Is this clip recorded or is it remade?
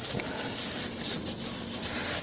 recorded